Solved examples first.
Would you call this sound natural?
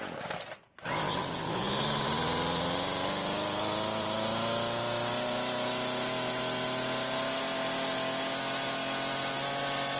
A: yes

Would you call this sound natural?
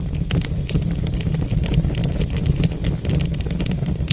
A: yes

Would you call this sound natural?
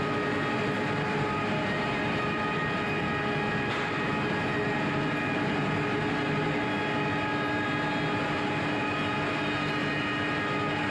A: yes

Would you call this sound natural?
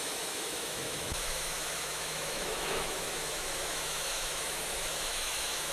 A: no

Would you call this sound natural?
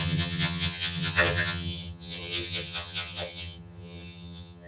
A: no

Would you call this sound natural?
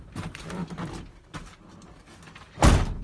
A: yes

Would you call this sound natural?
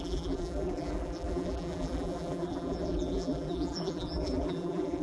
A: no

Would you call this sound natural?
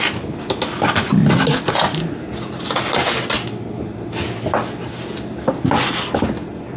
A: yes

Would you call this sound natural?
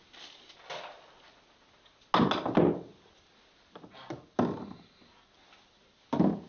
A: yes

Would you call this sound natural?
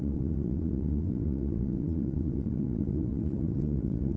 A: no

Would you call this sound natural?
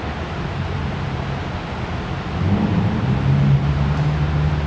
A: yes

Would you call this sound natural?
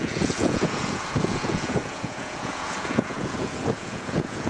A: no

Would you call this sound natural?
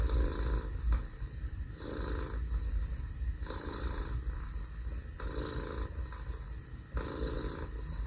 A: yes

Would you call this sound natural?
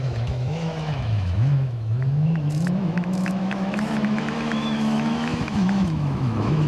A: no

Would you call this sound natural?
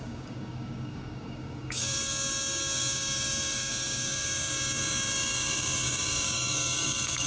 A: no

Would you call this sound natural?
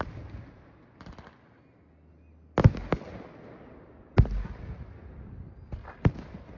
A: yes